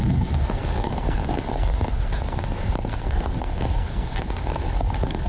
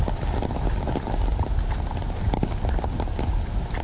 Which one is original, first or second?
second